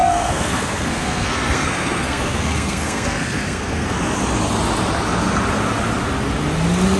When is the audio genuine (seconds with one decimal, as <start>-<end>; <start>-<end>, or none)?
4.0-7.0